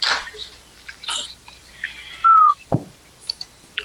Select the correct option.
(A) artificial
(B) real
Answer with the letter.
A